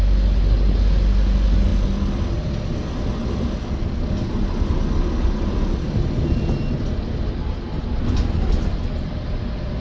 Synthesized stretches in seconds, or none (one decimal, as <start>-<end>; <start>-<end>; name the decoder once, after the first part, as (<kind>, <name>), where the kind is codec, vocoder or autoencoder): none